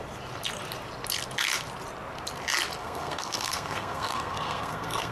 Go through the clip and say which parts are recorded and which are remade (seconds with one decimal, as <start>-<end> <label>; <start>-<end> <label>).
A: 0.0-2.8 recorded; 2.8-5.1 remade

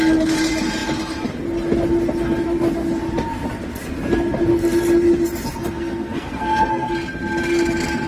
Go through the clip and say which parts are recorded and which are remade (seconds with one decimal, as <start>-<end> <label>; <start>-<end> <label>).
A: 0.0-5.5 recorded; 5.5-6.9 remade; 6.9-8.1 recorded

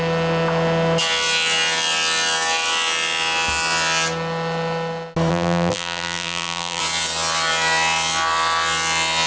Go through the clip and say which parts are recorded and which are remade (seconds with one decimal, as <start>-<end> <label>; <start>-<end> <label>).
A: 0.0-5.3 recorded; 5.3-6.8 remade; 6.8-9.3 recorded